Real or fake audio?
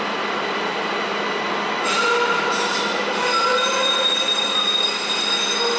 real